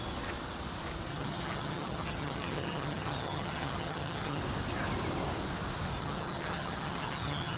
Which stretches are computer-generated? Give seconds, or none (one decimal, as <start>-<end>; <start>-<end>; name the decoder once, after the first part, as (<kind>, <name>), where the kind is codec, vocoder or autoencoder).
1.1-4.4 (vocoder, HiFi-GAN); 6.0-7.6